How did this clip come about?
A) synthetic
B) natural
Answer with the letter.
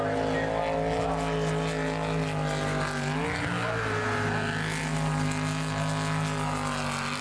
B